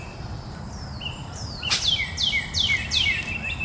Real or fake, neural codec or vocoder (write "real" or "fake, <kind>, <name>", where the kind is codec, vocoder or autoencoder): real